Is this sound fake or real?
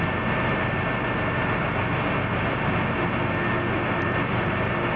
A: real